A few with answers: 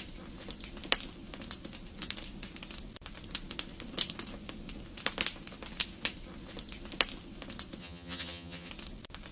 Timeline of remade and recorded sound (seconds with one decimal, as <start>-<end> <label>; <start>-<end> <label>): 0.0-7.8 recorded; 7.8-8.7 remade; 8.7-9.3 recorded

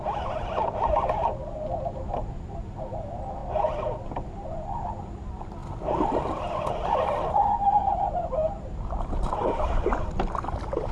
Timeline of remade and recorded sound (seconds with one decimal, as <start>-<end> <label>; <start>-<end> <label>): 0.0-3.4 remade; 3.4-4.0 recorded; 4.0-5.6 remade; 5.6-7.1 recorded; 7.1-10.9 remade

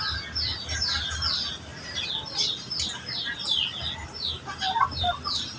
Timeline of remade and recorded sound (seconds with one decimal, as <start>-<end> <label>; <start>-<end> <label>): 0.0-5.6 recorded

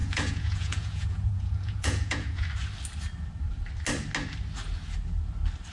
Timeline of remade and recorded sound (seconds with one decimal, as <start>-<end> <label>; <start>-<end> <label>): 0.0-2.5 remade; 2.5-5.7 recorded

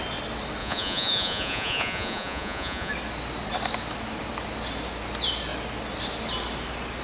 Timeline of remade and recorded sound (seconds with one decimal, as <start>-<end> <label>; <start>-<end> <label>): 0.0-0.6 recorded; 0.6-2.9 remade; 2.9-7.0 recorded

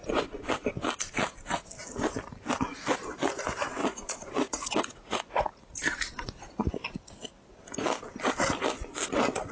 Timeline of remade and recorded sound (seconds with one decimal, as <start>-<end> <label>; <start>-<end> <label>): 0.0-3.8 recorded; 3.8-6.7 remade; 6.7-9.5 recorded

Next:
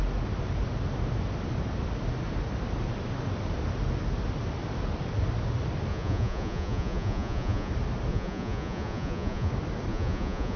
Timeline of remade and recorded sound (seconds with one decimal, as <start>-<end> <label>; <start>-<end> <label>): 0.0-5.9 recorded; 5.9-7.7 remade; 7.7-8.1 recorded; 8.1-9.5 remade; 9.5-9.9 recorded; 9.9-10.6 remade

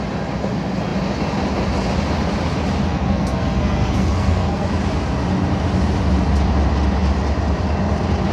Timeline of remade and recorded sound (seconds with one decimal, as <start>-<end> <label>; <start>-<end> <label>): 0.0-2.9 recorded; 2.9-4.7 remade; 4.7-8.3 recorded